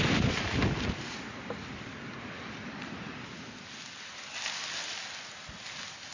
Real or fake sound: real